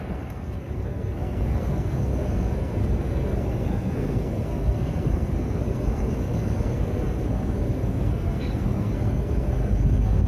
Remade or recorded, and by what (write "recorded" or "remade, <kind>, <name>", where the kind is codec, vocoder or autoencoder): remade, codec, SNAC